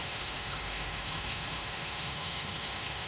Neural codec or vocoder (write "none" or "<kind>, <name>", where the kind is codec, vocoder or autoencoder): autoencoder, DAC-VAE